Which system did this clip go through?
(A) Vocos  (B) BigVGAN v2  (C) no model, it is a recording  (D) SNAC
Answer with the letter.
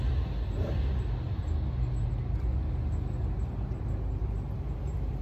C